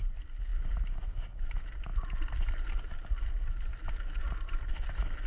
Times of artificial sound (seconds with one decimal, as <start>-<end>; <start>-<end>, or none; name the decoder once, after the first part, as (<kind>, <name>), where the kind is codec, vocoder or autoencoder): 0.5-1.4 (vocoder, BigVGAN v2)